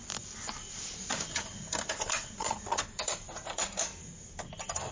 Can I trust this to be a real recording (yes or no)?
yes